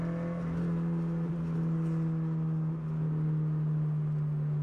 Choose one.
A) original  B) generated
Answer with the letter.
A